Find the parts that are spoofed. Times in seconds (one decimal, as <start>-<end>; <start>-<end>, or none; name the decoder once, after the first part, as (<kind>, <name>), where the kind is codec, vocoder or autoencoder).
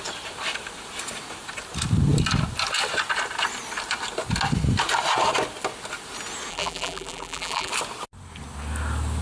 6.5-7.7 (vocoder, BigVGAN v2)